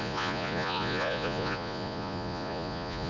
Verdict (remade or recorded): remade